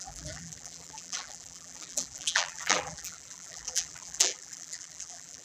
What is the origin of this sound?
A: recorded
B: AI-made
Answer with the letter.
B